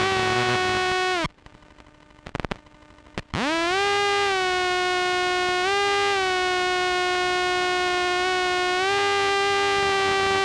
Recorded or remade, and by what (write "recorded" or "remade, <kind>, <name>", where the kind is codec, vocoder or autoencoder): recorded